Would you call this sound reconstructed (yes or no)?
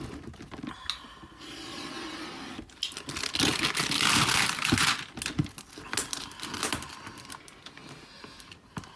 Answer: no